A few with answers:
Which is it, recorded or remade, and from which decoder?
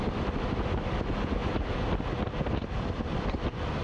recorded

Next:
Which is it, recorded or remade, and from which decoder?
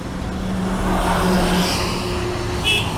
recorded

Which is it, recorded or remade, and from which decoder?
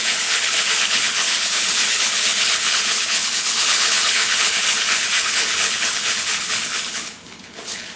remade, codec, HILCodec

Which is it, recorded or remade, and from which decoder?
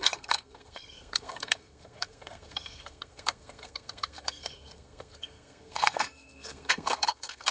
remade, codec, SNAC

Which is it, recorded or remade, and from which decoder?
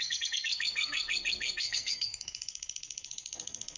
remade, codec, SNAC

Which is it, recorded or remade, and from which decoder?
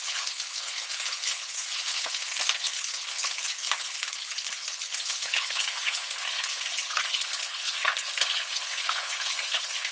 remade, codec, HILCodec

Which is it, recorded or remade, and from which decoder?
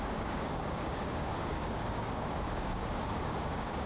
remade, codec, DAC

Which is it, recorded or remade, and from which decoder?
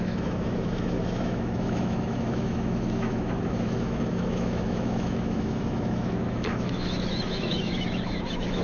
remade, autoencoder, DAC-VAE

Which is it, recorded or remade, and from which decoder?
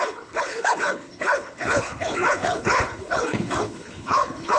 remade, codec, HILCodec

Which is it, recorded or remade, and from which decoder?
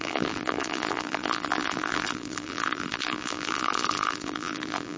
remade, vocoder, BigVGAN v2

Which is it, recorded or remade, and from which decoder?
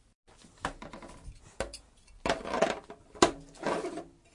recorded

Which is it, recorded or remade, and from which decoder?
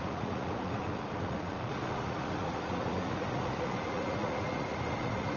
remade, vocoder, Vocos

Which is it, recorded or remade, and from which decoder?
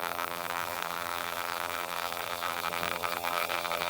remade, vocoder, BigVGAN v2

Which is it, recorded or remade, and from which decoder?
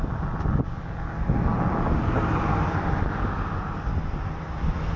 recorded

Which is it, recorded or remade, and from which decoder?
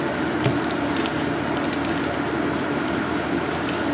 remade, vocoder, BigVGAN v2